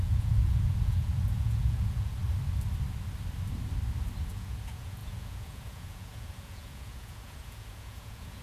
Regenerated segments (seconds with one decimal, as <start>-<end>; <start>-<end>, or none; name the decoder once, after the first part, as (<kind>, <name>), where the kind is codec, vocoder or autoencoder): 0.0-2.2 (vocoder, Vocos); 4.3-8.4